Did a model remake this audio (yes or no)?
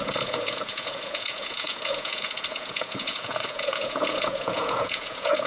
yes